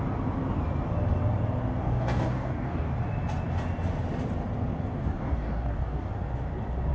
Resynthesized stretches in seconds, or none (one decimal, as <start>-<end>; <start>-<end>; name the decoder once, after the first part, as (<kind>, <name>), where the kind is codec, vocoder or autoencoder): 1.8-2.9 (codec, DAC); 5.0-6.1